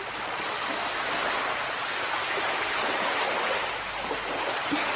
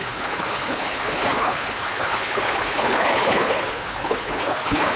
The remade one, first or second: second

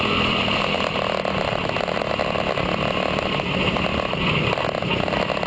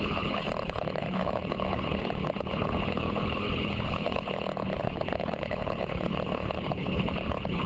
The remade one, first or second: second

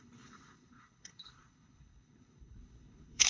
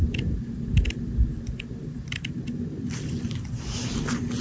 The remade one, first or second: first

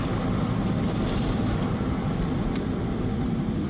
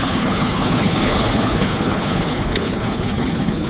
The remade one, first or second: second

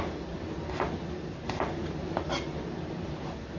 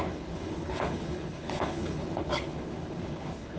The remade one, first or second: second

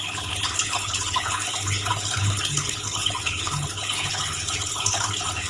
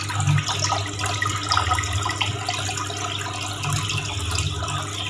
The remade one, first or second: first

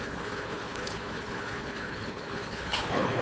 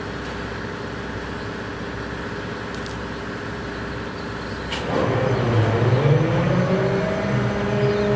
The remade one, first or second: first